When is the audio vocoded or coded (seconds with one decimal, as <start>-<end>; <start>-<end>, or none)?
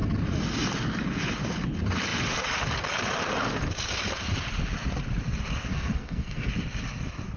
5.7-6.5